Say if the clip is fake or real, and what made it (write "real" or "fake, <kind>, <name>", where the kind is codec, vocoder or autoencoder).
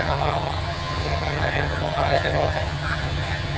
fake, vocoder, HiFi-GAN